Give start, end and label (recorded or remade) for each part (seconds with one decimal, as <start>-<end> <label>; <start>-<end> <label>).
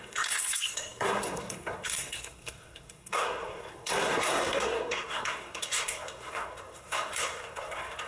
0.0-8.1 remade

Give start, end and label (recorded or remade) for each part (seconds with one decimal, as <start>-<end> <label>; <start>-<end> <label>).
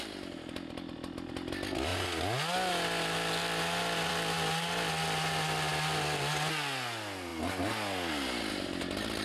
0.0-9.2 recorded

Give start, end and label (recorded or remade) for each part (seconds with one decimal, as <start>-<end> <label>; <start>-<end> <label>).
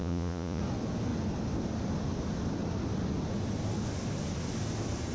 0.0-0.6 remade; 0.6-5.1 recorded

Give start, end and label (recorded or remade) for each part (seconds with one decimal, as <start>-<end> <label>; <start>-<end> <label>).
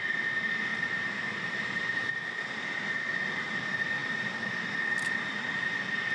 0.0-0.7 recorded; 0.7-2.1 remade; 2.1-6.1 recorded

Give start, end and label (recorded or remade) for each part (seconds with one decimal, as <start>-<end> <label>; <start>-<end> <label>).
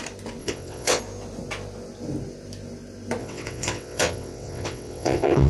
0.0-0.4 recorded; 0.4-1.0 remade; 1.0-3.2 recorded; 3.2-5.5 remade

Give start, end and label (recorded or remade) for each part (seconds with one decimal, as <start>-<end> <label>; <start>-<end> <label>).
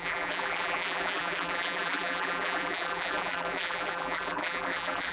0.0-5.1 remade